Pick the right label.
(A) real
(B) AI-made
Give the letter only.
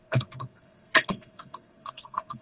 B